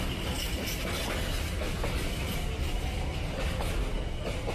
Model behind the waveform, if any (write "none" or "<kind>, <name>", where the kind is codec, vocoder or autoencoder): none